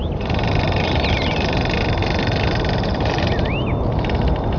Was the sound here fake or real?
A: real